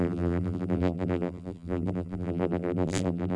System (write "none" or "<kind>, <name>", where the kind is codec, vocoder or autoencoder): vocoder, BigVGAN v2